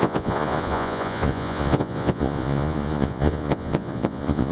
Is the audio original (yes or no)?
no